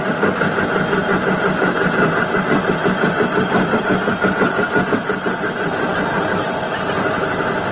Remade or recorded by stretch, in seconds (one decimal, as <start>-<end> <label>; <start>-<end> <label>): 0.0-7.7 recorded